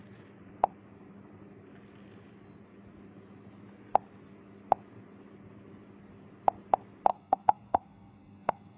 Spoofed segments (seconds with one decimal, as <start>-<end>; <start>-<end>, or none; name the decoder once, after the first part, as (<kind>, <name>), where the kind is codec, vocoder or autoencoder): 7.1-8.8 (codec, SNAC)